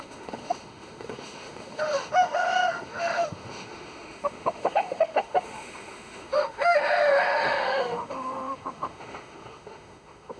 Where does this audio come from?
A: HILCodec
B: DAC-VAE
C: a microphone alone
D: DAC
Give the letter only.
B